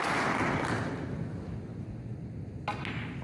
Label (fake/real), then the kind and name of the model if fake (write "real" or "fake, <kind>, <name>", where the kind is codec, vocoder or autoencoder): real